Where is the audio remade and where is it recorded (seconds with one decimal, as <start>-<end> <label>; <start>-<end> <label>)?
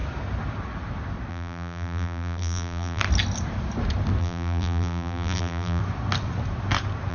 0.0-1.3 recorded; 1.3-3.0 remade; 3.0-4.2 recorded; 4.2-5.8 remade; 5.8-7.1 recorded